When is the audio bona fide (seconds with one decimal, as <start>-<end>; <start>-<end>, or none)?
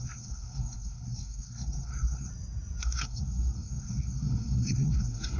2.3-2.8